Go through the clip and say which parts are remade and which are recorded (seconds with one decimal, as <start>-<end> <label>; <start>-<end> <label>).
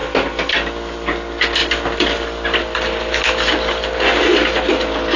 0.0-5.2 recorded